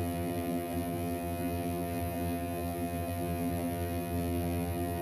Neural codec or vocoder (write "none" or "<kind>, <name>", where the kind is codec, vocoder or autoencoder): vocoder, BigVGAN v2